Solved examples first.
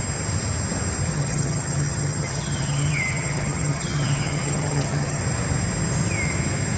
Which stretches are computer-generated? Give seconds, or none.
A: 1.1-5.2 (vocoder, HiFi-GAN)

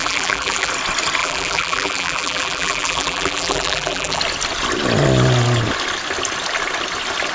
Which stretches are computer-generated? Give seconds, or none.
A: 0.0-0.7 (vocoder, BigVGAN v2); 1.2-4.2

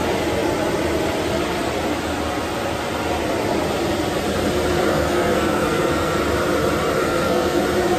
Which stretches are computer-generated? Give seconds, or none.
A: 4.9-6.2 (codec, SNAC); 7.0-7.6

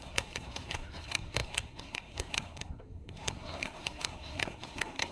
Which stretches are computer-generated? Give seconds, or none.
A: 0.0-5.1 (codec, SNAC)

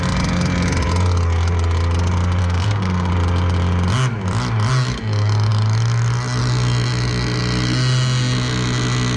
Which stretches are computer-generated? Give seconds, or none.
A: 2.4-3.1 (codec, SNAC)